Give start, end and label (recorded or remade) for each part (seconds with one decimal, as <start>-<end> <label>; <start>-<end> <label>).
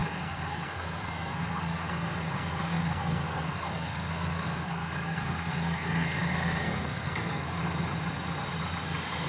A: 0.0-7.6 remade; 7.6-9.3 recorded